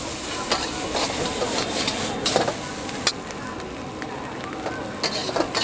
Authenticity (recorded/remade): recorded